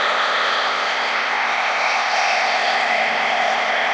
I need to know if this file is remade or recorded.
remade